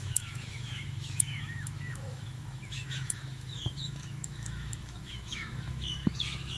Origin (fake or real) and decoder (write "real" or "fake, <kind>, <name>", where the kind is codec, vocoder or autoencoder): fake, autoencoder, DAC-VAE